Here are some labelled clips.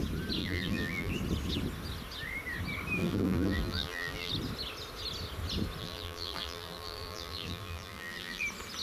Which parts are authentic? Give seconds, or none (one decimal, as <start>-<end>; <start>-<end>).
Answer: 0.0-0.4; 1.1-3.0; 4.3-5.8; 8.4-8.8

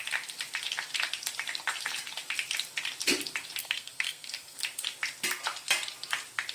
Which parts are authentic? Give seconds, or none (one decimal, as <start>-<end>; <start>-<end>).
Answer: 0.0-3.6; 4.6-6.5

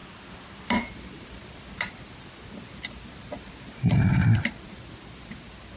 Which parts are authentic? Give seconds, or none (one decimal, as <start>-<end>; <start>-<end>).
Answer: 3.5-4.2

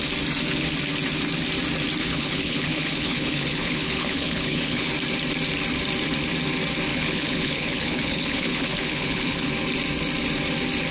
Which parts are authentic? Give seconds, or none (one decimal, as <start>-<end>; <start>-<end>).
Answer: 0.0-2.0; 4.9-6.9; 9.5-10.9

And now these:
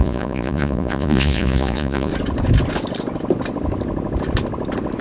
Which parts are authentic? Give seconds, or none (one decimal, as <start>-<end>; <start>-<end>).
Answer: 2.1-5.0

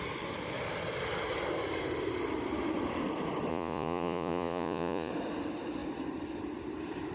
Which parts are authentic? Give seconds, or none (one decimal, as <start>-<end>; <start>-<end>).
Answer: 0.0-3.5; 5.1-7.1

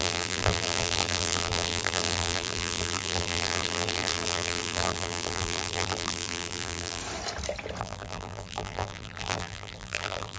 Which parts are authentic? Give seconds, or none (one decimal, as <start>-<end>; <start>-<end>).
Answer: 7.0-7.8